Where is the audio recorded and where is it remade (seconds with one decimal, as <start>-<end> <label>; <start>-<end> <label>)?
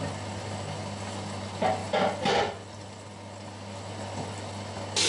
0.0-5.1 recorded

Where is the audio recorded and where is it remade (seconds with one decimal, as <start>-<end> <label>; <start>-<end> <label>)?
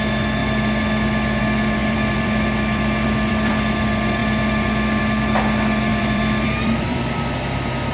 0.0-1.8 recorded; 1.8-3.5 remade; 3.5-5.9 recorded; 5.9-7.2 remade; 7.2-7.9 recorded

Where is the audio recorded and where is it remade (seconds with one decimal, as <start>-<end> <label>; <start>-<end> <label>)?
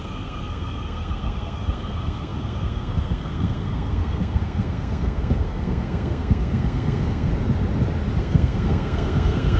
0.0-7.3 remade; 7.3-8.2 recorded; 8.2-9.6 remade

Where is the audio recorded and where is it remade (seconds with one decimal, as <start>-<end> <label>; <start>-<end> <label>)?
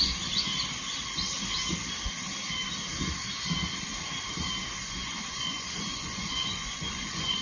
0.0-0.5 remade; 0.5-4.9 recorded; 4.9-7.4 remade